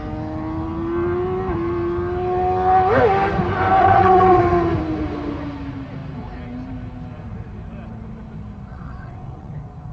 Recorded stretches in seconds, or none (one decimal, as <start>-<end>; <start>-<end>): 0.0-3.8; 4.4-8.7; 9.5-9.9